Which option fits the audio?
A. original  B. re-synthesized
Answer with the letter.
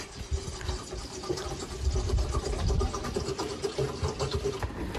B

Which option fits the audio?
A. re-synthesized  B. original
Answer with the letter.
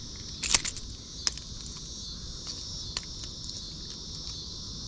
B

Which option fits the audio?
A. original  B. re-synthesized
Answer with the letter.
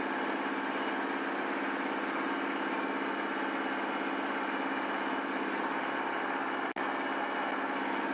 A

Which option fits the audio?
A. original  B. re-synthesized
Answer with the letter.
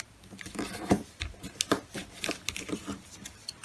B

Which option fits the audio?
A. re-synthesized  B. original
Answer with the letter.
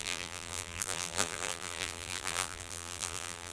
A